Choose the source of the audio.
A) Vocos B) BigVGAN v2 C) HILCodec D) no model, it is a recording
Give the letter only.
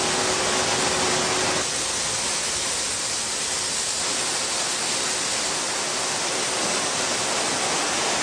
D